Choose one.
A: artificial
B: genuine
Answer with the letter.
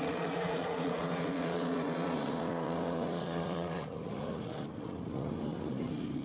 A